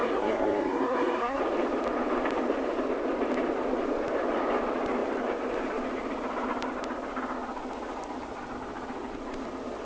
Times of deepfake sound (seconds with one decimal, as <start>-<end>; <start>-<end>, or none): 0.0-1.4